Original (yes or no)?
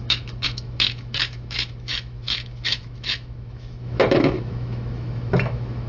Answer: no